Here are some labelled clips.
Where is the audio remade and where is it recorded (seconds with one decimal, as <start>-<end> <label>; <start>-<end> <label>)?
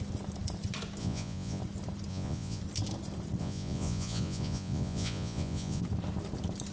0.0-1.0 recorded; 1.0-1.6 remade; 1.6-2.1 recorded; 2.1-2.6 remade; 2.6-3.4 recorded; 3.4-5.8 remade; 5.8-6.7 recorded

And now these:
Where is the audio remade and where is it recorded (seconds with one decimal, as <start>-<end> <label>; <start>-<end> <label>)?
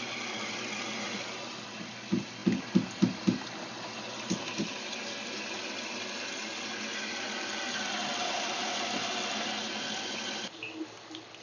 0.0-11.4 recorded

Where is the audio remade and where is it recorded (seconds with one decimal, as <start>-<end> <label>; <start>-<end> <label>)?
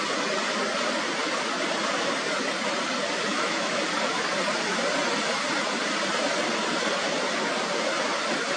0.0-3.3 recorded; 3.3-3.8 remade; 3.8-8.6 recorded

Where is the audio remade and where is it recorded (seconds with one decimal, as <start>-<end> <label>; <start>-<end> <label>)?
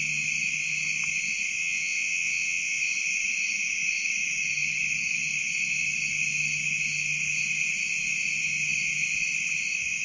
0.0-1.6 recorded; 1.6-2.8 remade; 2.8-10.0 recorded